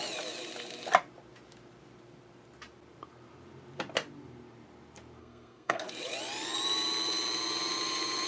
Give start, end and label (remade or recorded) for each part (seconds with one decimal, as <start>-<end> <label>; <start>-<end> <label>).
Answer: 0.0-5.2 recorded; 5.2-5.8 remade; 5.8-8.3 recorded